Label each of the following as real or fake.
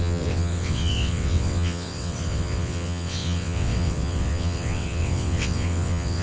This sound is fake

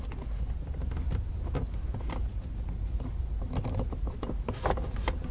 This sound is real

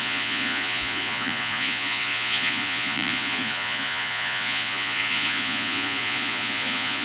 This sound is fake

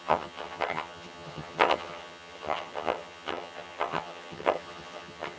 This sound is fake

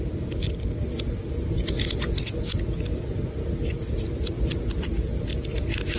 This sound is real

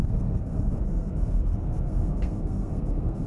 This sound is fake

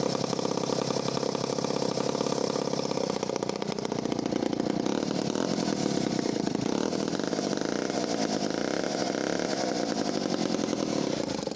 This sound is real